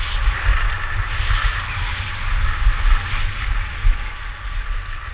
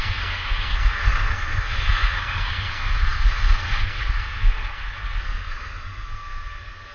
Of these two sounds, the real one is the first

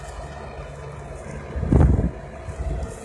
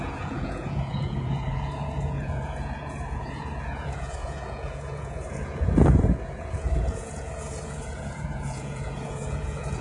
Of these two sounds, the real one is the first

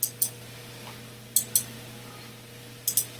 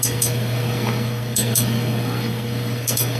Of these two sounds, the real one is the first